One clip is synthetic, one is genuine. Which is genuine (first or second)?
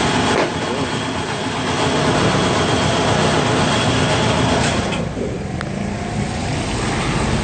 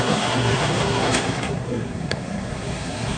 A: first